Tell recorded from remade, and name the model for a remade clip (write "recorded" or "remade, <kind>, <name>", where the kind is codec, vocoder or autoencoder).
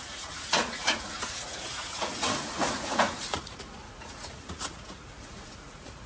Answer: remade, vocoder, Vocos